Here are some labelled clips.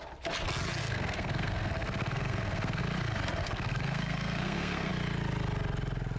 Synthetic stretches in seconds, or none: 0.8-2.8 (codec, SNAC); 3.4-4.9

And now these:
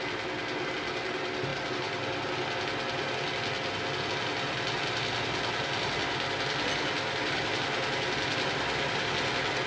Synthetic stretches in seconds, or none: none

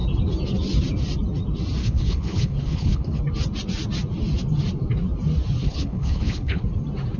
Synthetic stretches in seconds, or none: 1.8-3.2 (codec, HILCodec); 5.6-6.6

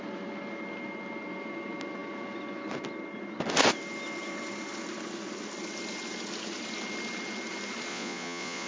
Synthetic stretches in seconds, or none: 7.9-8.7 (vocoder, Vocos)

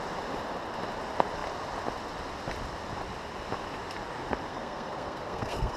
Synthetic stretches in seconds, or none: 4.5-5.8 (codec, SNAC)

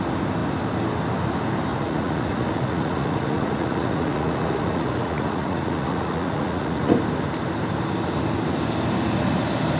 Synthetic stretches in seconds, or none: 1.7-6.9 (vocoder, Vocos)